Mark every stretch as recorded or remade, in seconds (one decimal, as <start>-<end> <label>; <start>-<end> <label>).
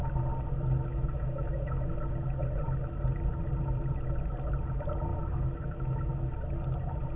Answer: 0.0-0.9 recorded; 0.9-1.9 remade; 1.9-5.1 recorded; 5.1-6.3 remade; 6.3-7.2 recorded